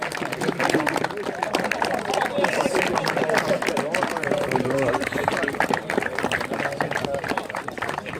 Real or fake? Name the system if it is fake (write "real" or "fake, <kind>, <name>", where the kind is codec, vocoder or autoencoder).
real